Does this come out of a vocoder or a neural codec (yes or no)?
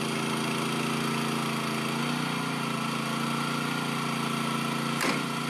no